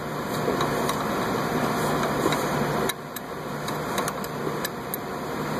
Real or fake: real